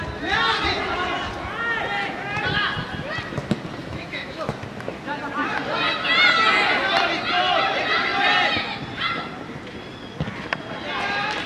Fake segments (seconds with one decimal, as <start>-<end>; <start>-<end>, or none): 3.8-4.5